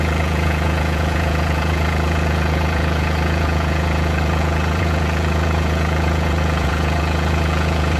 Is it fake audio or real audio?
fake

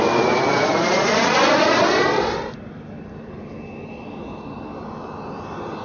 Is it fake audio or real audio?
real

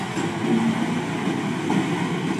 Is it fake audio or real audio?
real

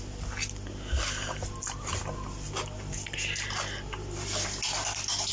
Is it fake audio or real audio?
real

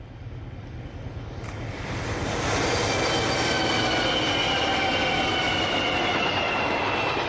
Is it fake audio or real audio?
real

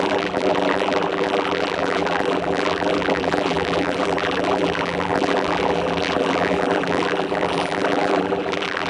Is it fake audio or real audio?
fake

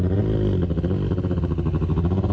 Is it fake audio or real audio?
real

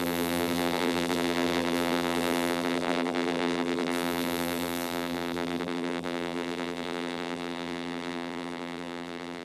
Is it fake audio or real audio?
fake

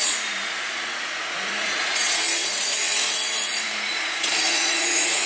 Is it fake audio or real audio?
fake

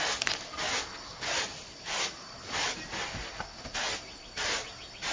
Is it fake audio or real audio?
real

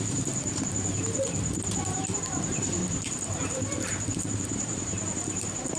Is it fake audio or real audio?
fake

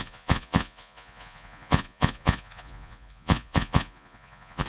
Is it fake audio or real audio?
fake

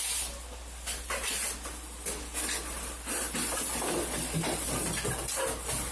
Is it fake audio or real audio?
fake